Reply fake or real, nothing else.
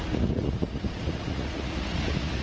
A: fake